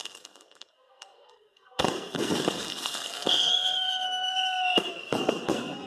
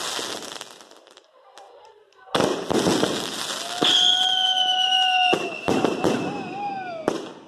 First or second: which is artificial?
first